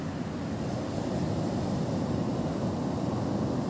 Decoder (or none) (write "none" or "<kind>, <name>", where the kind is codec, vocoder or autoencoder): none